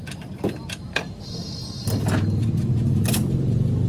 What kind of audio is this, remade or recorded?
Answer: recorded